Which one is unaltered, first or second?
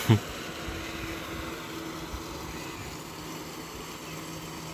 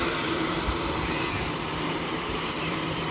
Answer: first